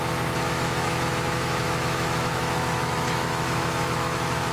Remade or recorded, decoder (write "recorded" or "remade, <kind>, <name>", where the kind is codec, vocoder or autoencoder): remade, autoencoder, DAC-VAE